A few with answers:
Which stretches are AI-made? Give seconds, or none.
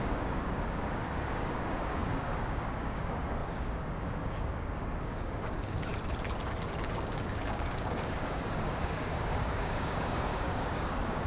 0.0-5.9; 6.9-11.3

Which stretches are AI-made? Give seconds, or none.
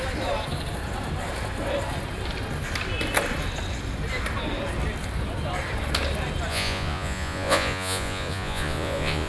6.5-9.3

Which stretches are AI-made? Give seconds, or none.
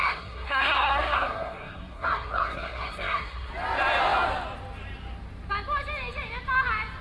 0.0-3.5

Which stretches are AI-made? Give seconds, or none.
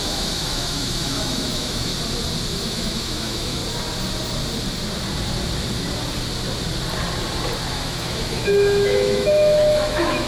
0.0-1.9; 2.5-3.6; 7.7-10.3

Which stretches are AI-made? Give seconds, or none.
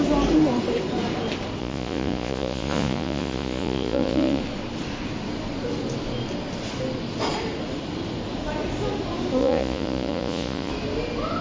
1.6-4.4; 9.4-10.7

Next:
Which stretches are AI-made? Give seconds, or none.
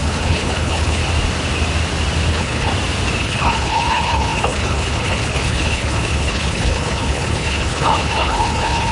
0.0-1.0; 2.3-2.7; 3.2-8.9